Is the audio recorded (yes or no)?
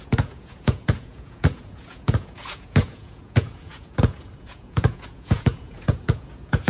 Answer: no